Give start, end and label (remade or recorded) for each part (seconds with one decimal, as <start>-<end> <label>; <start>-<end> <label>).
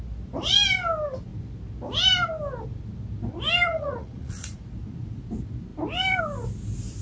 0.0-3.7 recorded; 3.7-4.6 remade; 4.6-7.0 recorded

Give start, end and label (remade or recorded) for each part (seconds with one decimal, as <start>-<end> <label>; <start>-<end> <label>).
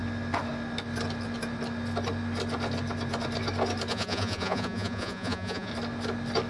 0.0-3.9 recorded; 3.9-5.7 remade; 5.7-6.5 recorded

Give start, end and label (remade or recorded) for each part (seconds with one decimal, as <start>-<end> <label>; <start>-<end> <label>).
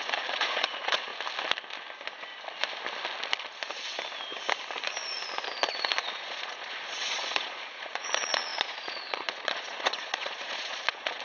0.0-1.1 remade; 1.1-6.0 recorded; 6.0-11.2 remade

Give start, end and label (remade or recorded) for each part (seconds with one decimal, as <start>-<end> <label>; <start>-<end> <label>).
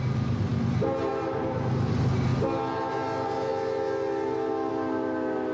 0.0-5.5 recorded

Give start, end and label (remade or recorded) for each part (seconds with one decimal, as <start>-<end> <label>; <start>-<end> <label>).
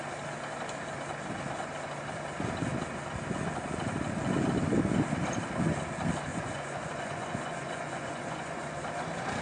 0.0-6.3 recorded; 6.3-8.8 remade; 8.8-9.4 recorded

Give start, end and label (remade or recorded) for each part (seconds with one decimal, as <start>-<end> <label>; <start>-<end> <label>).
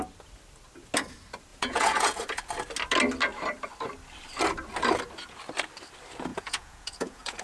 0.0-1.5 recorded; 1.5-2.2 remade; 2.2-6.3 recorded; 6.3-7.4 remade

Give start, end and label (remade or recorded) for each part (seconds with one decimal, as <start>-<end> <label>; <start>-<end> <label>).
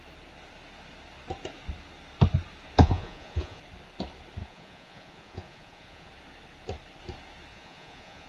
0.0-2.8 recorded; 2.8-3.6 remade; 3.6-4.4 recorded; 4.4-6.1 remade; 6.1-7.5 recorded; 7.5-8.3 remade